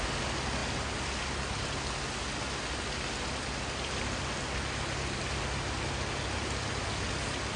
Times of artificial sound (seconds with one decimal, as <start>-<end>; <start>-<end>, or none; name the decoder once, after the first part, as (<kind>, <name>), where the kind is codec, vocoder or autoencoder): none